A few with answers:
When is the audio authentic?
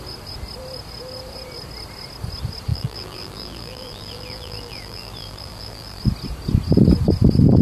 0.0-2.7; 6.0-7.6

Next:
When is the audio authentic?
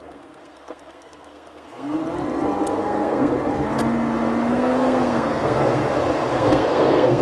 2.0-2.7; 3.3-4.5; 5.8-6.3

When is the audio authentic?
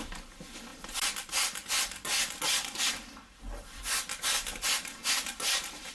0.0-5.9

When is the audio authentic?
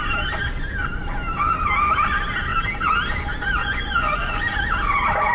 0.0-3.6; 4.4-5.3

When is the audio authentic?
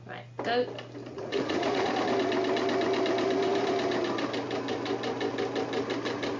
0.0-1.1; 1.9-6.4